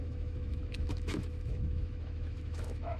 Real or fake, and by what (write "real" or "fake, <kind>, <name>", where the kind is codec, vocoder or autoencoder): fake, autoencoder, DAC-VAE